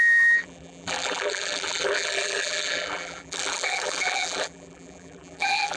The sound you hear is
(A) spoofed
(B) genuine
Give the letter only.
A